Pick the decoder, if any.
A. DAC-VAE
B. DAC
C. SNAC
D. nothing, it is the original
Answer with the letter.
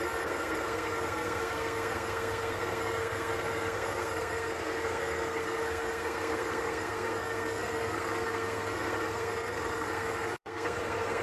C